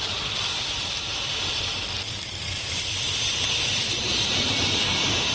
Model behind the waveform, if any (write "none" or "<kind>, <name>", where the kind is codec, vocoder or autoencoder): none